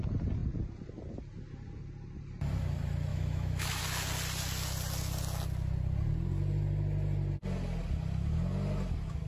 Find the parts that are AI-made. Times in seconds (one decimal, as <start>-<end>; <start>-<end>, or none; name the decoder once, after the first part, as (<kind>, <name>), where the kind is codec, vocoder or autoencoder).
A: 3.1-3.8 (autoencoder, DAC-VAE)